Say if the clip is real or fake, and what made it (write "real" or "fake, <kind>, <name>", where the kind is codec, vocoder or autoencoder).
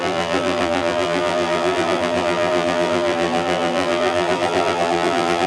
fake, vocoder, BigVGAN v2